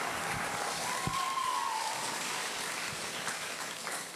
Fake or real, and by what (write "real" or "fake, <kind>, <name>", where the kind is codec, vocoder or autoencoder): fake, codec, DAC